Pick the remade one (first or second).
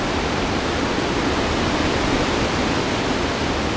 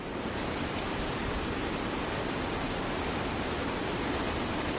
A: second